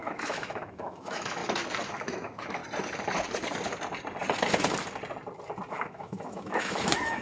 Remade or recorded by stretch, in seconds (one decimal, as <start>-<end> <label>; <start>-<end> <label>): 0.0-1.4 remade; 1.4-1.9 recorded; 1.9-2.6 remade; 2.6-5.7 recorded; 5.7-7.2 remade

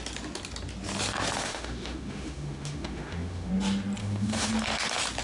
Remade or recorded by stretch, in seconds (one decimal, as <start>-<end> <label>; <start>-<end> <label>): 0.0-1.4 recorded; 1.4-3.5 remade; 3.5-4.0 recorded; 4.0-4.5 remade; 4.5-5.2 recorded

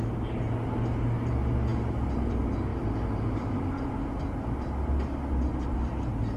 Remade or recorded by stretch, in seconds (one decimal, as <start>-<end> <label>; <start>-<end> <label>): 0.0-6.4 recorded

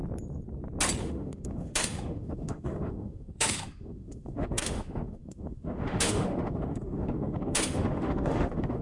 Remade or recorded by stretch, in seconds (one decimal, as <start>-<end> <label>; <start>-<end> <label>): 0.0-1.0 recorded; 1.0-8.8 remade

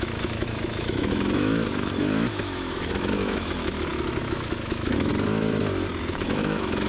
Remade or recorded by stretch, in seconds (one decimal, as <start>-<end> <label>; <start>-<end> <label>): 0.0-5.1 remade; 5.1-6.0 recorded; 6.0-6.9 remade

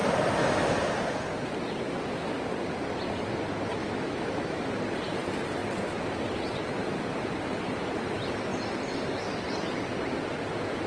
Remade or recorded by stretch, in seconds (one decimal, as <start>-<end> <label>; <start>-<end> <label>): 0.0-3.8 recorded; 3.8-4.7 remade; 4.7-10.9 recorded